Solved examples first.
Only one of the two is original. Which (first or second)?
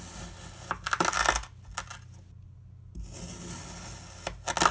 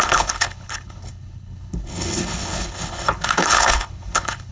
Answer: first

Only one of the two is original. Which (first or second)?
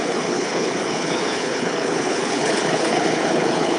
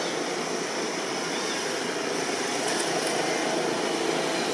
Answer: second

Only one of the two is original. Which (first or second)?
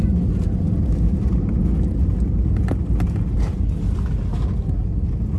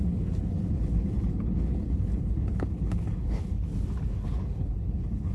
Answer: first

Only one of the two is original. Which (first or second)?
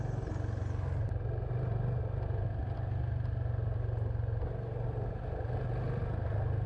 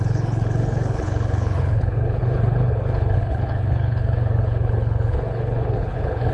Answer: first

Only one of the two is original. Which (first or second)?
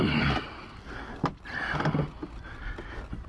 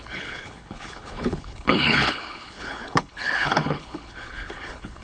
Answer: first